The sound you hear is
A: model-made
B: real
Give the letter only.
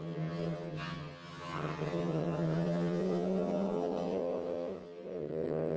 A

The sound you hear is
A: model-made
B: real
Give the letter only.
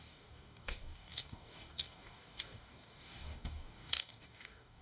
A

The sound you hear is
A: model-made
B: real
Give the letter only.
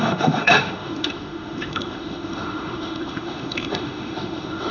A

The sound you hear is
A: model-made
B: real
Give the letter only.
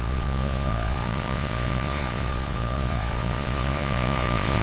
A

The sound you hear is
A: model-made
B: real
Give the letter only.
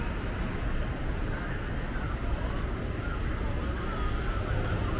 B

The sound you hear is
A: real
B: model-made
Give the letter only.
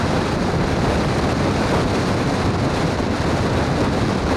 A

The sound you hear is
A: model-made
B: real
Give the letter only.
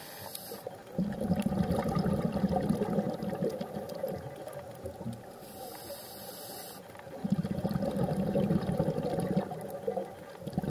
B